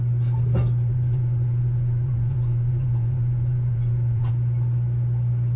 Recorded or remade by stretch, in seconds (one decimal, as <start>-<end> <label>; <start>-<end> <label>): 0.0-0.9 recorded; 0.9-4.3 remade; 4.3-5.6 recorded

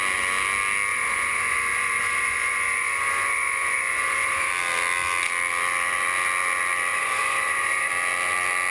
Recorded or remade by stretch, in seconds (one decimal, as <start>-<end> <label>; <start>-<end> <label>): 0.0-0.9 recorded; 0.9-4.5 remade; 4.5-6.9 recorded; 6.9-7.9 remade; 7.9-8.7 recorded

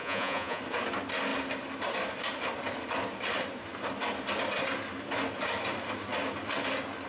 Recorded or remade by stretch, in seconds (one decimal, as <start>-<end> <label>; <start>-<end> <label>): 0.0-0.6 remade; 0.6-7.1 recorded

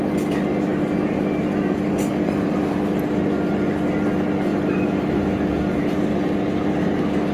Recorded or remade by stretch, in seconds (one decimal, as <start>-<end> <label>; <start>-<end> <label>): 0.0-7.3 recorded

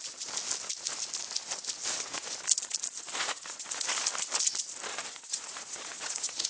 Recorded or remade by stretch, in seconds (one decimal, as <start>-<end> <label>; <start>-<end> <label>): 0.0-3.1 recorded; 3.1-3.7 remade; 3.7-4.9 recorded; 4.9-6.5 remade

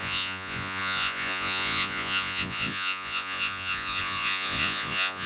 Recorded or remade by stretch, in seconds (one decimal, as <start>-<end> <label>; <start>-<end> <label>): 0.0-5.3 remade

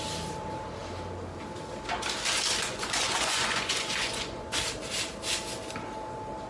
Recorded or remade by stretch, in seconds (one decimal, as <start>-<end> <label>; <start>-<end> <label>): 0.0-2.6 recorded; 2.6-4.6 remade; 4.6-6.5 recorded

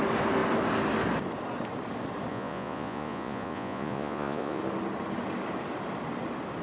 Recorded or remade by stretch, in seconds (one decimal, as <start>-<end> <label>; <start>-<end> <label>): 0.0-2.3 recorded; 2.3-4.6 remade; 4.6-6.6 recorded